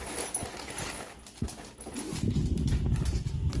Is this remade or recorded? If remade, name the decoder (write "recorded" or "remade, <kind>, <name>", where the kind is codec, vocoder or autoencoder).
recorded